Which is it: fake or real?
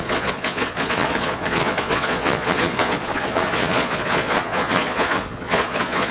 fake